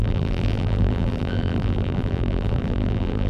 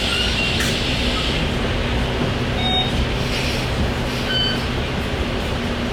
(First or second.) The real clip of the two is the second